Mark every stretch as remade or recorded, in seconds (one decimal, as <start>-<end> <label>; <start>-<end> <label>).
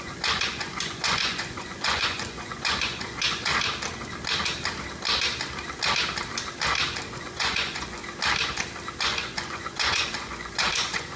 0.0-3.5 remade; 3.5-7.1 recorded; 7.1-8.0 remade; 8.0-9.0 recorded; 9.0-11.2 remade